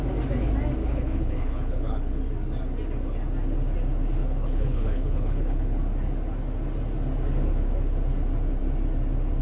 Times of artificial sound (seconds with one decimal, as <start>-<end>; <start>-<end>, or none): 0.8-2.2; 4.2-5.8